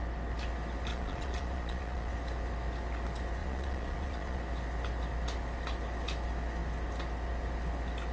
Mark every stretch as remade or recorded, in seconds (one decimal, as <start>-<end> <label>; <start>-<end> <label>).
0.0-0.9 recorded; 0.9-2.1 remade; 2.1-3.4 recorded; 3.4-4.4 remade; 4.4-8.1 recorded